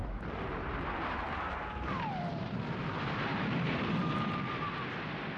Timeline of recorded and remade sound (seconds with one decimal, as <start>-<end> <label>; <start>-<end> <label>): 0.0-2.6 remade; 2.6-3.3 recorded; 3.3-3.9 remade; 3.9-5.4 recorded